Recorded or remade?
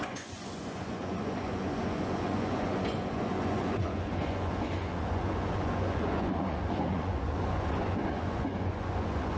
remade